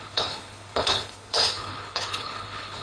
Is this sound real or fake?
fake